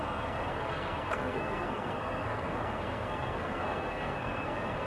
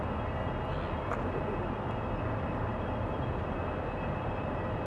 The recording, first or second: second